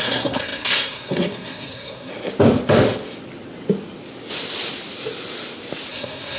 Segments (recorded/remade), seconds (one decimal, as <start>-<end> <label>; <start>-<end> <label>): 0.0-2.1 remade; 2.1-5.9 recorded; 5.9-6.4 remade

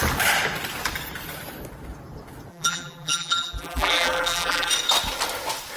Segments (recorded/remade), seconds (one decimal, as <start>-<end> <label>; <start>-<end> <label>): 0.0-2.5 recorded; 2.5-4.7 remade; 4.7-5.8 recorded

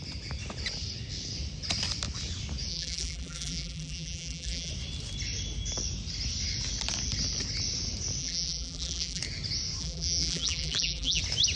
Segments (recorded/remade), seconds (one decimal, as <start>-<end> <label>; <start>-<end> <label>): 0.0-2.7 recorded; 2.7-4.7 remade; 4.7-8.2 recorded; 8.2-9.2 remade; 9.2-9.8 recorded; 9.8-11.2 remade; 11.2-11.6 recorded

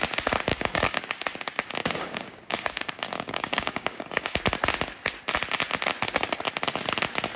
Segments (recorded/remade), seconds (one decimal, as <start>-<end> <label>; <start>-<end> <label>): 0.0-0.5 recorded; 0.5-1.0 remade; 1.0-1.8 recorded; 1.8-4.4 remade; 4.4-7.4 recorded